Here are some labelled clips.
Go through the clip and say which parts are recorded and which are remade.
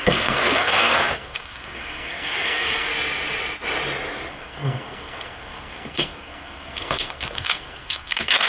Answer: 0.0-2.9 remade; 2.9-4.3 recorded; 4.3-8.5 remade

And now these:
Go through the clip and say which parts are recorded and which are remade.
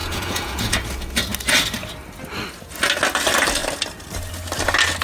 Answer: 0.0-0.6 remade; 0.6-5.0 recorded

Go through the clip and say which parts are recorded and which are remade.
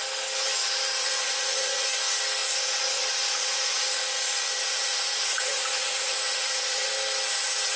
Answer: 0.0-1.0 recorded; 1.0-1.9 remade; 1.9-2.4 recorded; 2.4-6.9 remade; 6.9-7.8 recorded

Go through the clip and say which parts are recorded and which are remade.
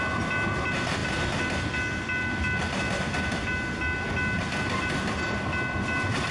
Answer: 0.0-6.3 recorded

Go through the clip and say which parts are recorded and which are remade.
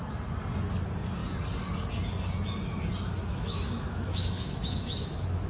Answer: 0.0-3.2 recorded; 3.2-5.5 remade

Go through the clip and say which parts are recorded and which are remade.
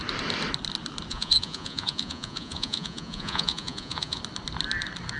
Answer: 0.0-1.1 recorded; 1.1-4.2 remade; 4.2-5.2 recorded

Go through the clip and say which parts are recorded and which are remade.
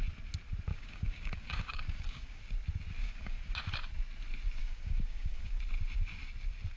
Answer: 0.0-0.7 recorded; 0.7-2.4 remade; 2.4-3.0 recorded; 3.0-3.5 remade; 3.5-4.6 recorded; 4.6-5.6 remade; 5.6-6.8 recorded